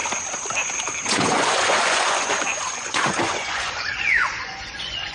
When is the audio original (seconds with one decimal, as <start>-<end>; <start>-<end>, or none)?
0.0-0.9